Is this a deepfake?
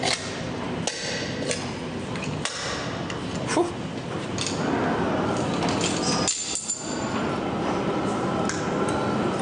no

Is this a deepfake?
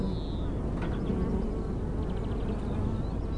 no